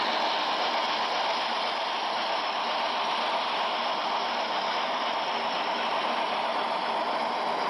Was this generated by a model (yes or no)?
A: no